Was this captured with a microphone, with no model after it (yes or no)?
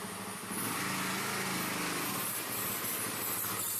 yes